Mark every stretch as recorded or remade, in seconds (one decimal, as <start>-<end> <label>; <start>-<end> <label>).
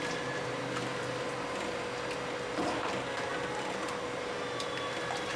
0.0-5.4 recorded